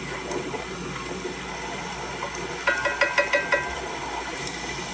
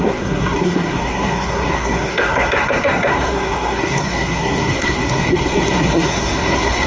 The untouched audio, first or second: first